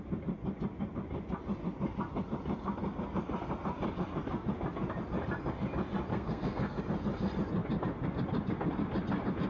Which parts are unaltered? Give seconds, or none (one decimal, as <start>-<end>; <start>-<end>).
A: 0.0-6.1; 6.8-9.5